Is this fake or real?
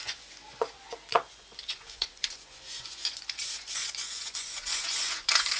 fake